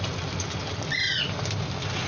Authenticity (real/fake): real